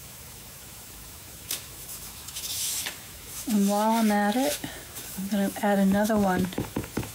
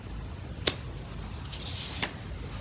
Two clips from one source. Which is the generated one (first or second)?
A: first